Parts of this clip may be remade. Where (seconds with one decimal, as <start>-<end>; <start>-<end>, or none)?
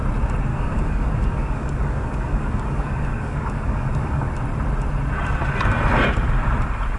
0.5-4.3